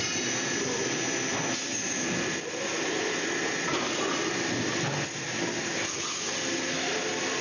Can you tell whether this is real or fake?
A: real